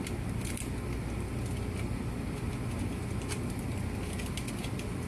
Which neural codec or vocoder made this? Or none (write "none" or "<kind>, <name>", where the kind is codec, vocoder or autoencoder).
none